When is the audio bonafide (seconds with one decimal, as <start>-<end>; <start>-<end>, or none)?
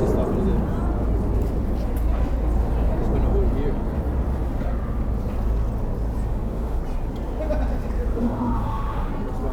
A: 0.0-6.3; 6.8-8.1; 9.1-9.5